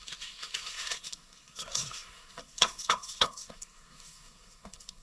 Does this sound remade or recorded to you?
remade